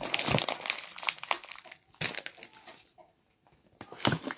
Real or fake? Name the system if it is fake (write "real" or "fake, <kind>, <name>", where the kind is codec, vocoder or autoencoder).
real